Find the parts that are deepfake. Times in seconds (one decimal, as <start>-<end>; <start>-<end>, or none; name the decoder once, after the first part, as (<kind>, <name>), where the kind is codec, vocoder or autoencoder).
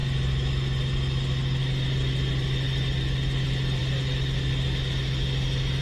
none